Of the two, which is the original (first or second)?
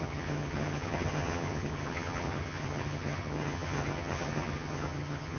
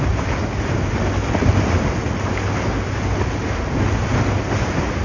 second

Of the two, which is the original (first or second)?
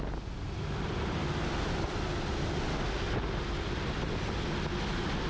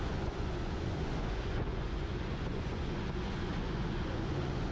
first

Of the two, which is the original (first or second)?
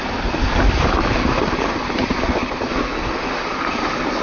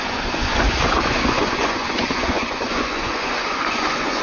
first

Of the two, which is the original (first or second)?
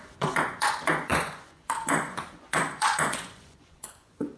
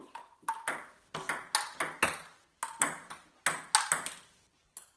second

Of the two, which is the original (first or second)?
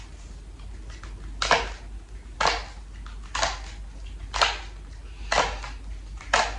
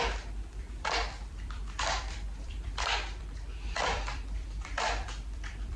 first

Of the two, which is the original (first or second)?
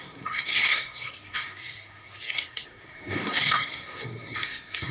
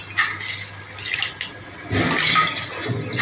second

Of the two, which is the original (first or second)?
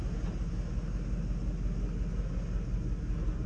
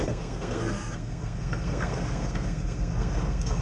first